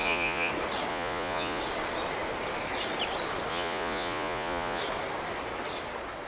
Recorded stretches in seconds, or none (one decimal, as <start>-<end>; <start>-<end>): 0.5-0.9; 1.6-3.5; 4.8-6.3